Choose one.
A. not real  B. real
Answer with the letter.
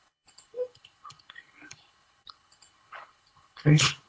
A